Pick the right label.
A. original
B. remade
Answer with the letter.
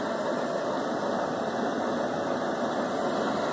A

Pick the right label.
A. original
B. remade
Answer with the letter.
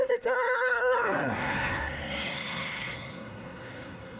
B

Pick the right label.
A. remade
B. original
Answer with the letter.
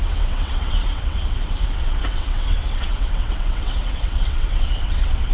A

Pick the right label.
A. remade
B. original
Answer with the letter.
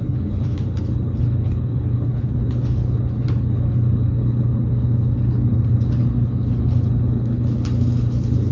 A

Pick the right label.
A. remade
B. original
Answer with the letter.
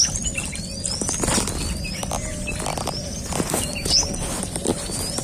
B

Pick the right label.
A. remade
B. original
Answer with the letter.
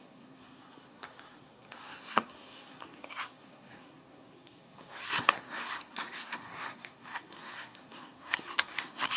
A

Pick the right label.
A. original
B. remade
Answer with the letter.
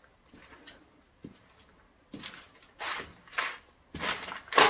A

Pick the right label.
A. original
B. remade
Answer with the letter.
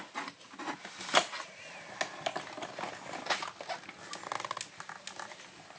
A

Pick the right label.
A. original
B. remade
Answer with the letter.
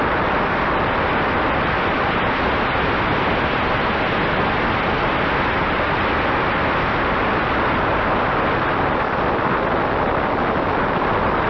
A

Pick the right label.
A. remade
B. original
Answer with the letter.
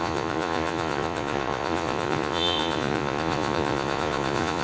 A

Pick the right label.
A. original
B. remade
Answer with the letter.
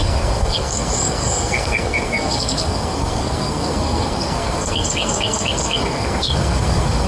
B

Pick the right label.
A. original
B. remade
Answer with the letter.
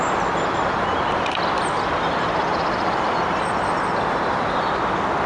A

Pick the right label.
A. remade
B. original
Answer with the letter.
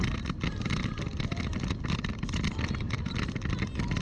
B